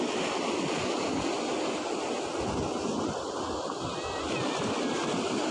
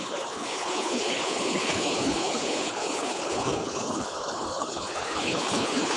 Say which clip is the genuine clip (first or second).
first